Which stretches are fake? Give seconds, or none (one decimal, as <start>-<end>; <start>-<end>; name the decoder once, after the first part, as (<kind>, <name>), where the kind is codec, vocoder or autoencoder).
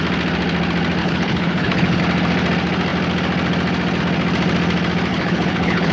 1.0-2.0 (codec, HILCodec); 5.1-5.9